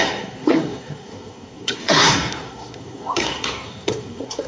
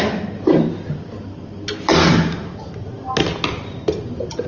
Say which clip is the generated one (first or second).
first